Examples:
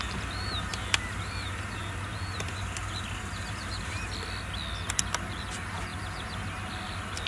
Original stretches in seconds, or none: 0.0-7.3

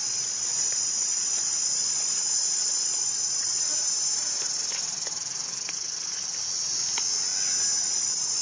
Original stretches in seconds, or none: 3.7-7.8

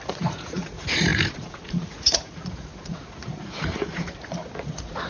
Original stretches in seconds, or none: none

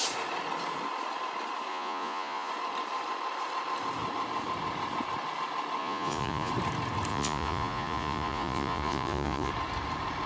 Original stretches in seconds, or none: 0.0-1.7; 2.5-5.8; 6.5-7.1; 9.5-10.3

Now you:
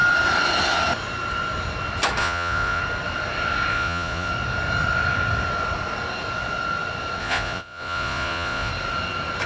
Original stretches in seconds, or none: 0.0-2.2; 2.8-3.7; 4.3-7.2; 8.7-9.5

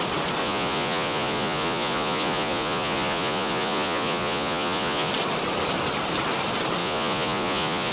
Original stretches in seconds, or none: 0.0-0.4; 5.1-6.8

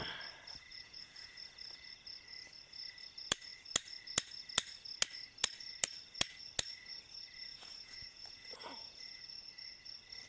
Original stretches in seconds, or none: 0.0-0.7; 1.4-7.5; 9.2-10.3

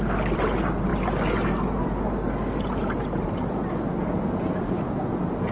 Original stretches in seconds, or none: 0.0-5.5